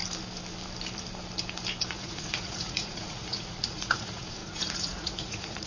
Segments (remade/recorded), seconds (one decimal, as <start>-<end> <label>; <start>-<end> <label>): 0.0-1.9 recorded; 1.9-5.7 remade